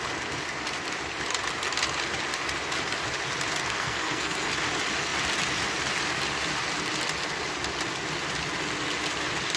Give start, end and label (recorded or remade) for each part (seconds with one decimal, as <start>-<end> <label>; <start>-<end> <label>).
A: 0.0-3.6 recorded; 3.6-4.5 remade; 4.5-9.6 recorded